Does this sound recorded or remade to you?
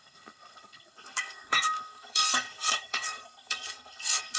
remade